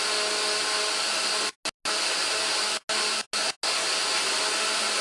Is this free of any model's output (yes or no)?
yes